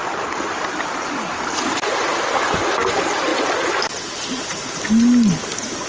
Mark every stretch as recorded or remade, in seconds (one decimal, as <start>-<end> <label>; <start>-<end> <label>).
0.0-1.6 remade; 1.6-5.9 recorded